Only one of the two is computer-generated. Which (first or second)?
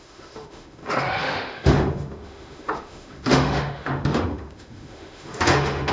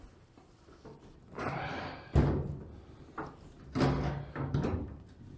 first